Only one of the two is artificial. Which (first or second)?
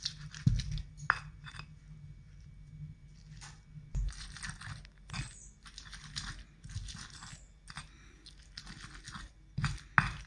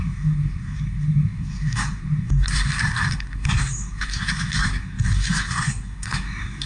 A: second